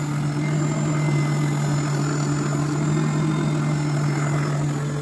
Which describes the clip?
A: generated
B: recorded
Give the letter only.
B